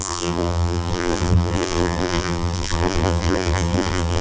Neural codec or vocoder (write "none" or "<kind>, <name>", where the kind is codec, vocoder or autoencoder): vocoder, BigVGAN v2